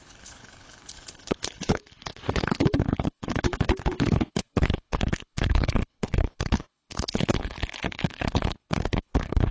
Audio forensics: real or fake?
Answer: fake